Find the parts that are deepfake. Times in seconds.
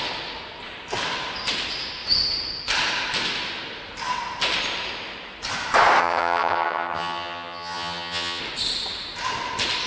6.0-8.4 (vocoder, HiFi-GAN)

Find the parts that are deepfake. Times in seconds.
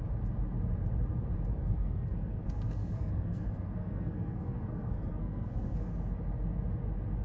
1.6-5.9 (codec, SNAC)